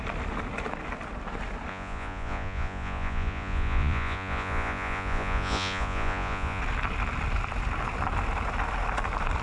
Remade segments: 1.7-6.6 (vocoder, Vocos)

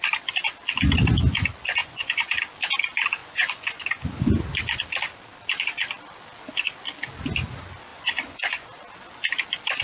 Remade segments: 1.8-2.4 (vocoder, Vocos); 3.2-4.1; 7.9-8.8